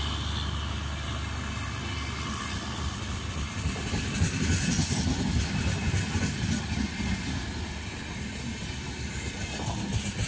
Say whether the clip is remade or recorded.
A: recorded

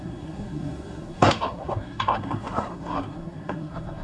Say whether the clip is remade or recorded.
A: remade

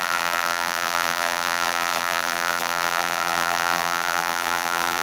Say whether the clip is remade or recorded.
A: remade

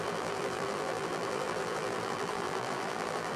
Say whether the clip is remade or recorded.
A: remade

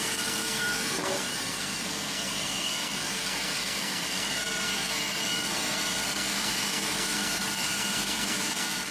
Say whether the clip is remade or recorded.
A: remade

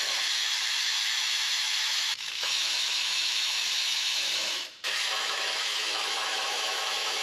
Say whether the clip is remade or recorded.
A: remade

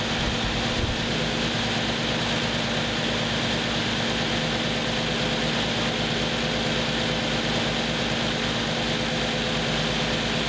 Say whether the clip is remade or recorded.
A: recorded